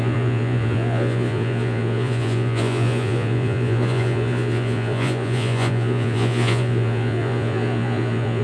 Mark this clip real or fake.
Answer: fake